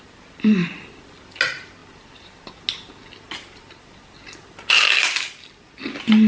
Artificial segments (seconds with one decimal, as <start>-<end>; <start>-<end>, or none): none